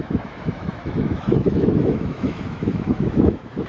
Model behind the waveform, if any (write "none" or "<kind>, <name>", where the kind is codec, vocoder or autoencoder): autoencoder, DAC-VAE